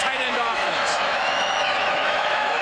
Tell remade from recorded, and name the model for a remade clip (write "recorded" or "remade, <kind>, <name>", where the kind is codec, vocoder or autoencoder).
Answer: remade, autoencoder, DAC-VAE